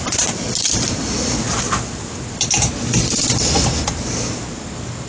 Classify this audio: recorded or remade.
recorded